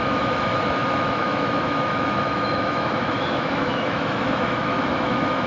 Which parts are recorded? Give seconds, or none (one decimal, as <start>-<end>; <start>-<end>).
none

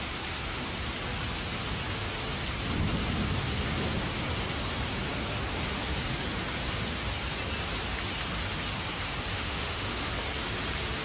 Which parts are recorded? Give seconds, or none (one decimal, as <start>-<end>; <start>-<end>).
0.0-9.3; 10.1-11.0

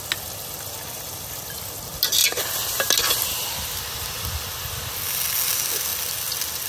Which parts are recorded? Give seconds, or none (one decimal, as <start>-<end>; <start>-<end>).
0.0-6.7

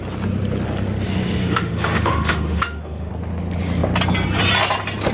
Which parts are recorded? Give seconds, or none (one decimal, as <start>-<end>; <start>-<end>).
0.0-1.4; 3.1-5.1

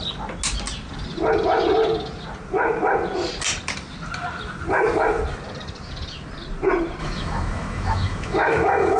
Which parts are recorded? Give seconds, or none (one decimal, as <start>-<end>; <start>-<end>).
0.0-7.0

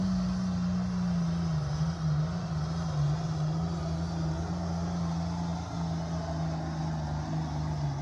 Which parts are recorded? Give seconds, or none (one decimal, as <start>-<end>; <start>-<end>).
0.0-8.0

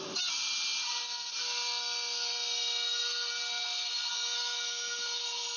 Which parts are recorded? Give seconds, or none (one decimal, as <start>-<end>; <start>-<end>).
0.0-5.6

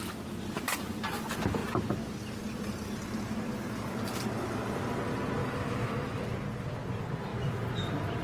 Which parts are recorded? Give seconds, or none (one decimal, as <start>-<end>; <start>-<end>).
0.0-5.4; 6.2-8.2